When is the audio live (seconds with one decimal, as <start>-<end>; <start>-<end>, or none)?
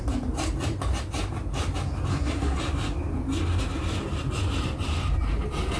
0.0-2.1; 2.6-5.8